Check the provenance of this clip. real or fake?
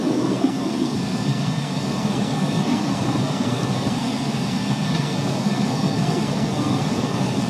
fake